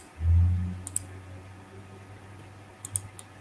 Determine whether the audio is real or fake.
real